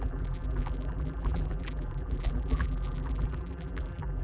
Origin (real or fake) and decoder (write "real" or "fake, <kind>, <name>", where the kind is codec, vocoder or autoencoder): fake, vocoder, BigVGAN v2